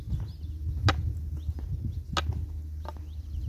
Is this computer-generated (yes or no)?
no